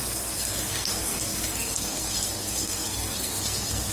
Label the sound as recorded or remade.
remade